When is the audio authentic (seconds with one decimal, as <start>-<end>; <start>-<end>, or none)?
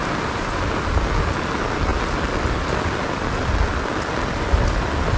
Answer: 0.9-5.2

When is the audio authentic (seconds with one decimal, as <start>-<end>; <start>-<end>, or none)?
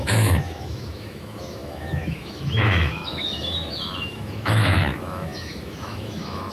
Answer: none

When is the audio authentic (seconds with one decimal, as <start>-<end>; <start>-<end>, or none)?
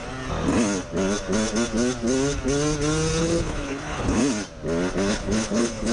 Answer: 0.0-3.2; 4.2-5.1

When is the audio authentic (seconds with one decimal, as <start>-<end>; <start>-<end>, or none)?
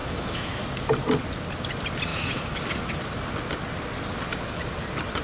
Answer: 0.6-2.1; 2.6-5.2